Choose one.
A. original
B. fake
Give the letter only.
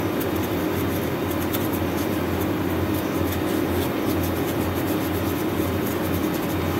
A